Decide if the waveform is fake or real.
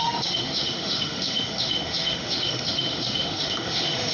fake